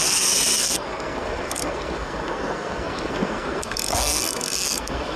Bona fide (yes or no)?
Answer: no